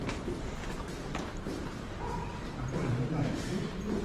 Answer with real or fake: fake